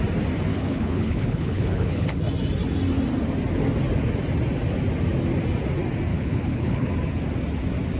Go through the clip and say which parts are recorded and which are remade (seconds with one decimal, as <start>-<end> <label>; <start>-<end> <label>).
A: 0.0-0.5 recorded; 0.5-2.2 remade; 2.2-6.1 recorded; 6.1-6.9 remade; 6.9-8.0 recorded